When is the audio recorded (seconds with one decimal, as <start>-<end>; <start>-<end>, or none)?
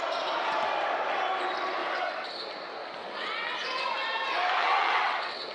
0.0-1.8; 2.3-2.8; 3.9-4.6